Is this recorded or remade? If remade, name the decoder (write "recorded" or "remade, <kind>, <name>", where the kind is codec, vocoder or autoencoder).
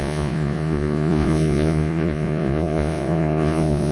remade, vocoder, Vocos